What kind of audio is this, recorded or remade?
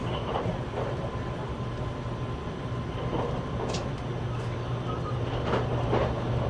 recorded